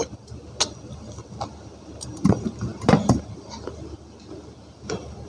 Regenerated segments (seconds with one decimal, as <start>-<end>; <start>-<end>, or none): none